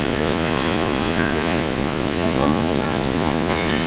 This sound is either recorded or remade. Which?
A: remade